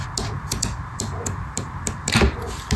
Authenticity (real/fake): real